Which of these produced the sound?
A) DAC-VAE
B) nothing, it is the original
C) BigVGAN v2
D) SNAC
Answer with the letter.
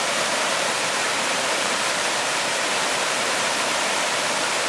C